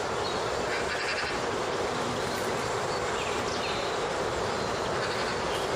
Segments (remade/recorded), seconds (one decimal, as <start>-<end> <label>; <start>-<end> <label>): 0.0-1.1 recorded; 1.1-4.6 remade; 4.6-5.8 recorded